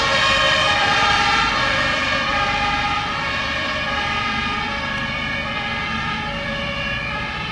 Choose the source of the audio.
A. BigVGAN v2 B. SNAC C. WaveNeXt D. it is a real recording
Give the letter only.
A